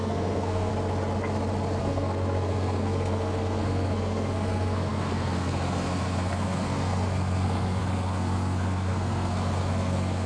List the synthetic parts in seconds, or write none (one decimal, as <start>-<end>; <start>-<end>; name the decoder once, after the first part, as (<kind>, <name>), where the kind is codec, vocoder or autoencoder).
0.0-0.7 (codec, SNAC); 1.8-10.3